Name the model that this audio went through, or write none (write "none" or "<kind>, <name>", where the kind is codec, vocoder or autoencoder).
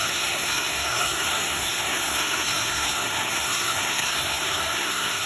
codec, SNAC